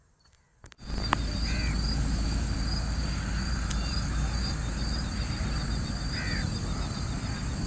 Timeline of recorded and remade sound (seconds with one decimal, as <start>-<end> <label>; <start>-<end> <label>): 0.0-7.7 recorded